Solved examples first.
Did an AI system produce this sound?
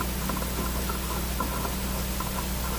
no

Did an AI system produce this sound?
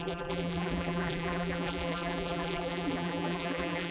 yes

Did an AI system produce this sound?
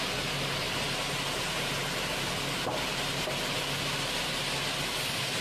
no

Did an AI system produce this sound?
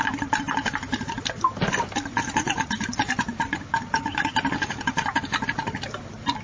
yes